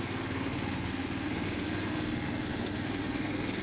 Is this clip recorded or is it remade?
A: remade